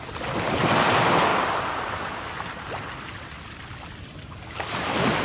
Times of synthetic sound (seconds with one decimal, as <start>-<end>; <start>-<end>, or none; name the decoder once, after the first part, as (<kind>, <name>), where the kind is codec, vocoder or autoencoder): none